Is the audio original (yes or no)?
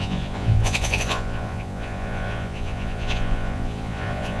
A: no